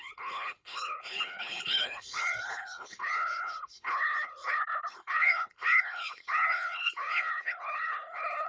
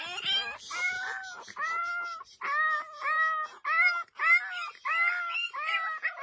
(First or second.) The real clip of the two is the second